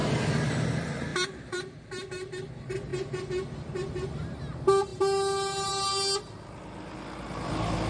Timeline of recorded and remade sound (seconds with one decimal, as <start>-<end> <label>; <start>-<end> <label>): 0.0-0.6 remade; 0.6-1.1 recorded; 1.1-2.5 remade; 2.5-2.9 recorded; 2.9-4.4 remade; 4.4-7.9 recorded